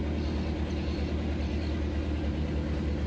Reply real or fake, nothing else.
real